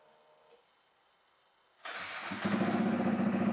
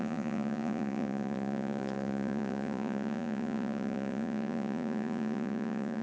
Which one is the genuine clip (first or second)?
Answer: first